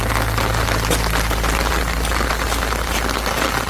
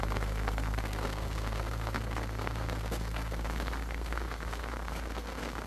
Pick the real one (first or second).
first